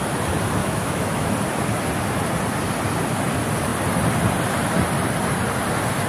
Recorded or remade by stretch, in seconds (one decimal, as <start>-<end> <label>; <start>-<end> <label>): 0.0-0.6 recorded; 0.6-1.3 remade; 1.3-6.1 recorded